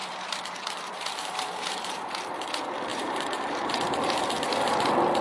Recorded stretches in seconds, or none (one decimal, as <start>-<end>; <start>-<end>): 2.1-2.9; 3.8-5.2